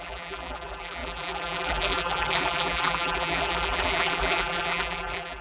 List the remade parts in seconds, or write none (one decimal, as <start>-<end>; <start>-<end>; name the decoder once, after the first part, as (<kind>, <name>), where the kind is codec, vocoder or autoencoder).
0.0-5.4 (vocoder, BigVGAN v2)